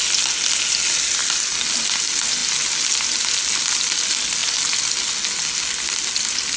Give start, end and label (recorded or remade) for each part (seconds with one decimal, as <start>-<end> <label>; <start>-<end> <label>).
0.0-6.6 recorded